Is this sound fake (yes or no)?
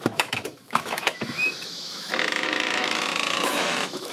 yes